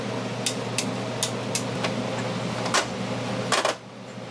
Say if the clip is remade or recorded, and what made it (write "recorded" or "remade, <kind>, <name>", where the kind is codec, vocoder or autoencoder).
recorded